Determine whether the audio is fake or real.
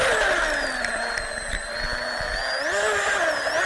real